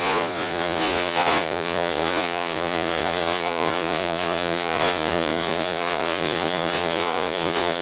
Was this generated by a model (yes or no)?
yes